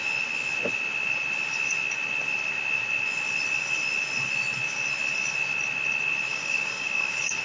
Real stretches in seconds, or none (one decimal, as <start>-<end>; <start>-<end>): 0.0-6.3